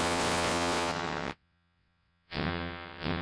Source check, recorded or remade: remade